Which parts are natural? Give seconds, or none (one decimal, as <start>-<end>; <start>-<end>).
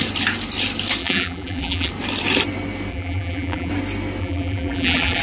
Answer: 0.0-1.0; 1.9-2.9; 3.7-4.2